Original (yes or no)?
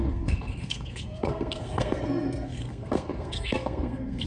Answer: no